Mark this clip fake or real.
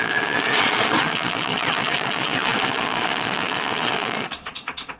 fake